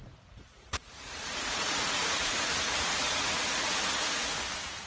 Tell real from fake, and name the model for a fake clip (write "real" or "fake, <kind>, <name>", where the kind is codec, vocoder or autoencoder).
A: fake, vocoder, Vocos